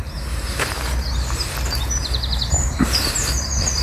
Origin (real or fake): fake